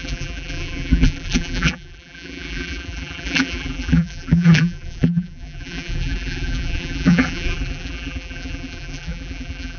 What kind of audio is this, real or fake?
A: fake